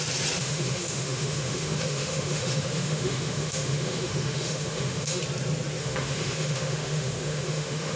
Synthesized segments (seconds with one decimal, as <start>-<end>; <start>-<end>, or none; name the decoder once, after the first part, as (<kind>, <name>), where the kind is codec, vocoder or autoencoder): 0.4-5.2 (autoencoder, DAC-VAE); 5.8-8.0